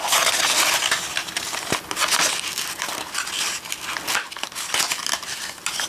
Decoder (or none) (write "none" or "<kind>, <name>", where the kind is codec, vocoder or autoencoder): none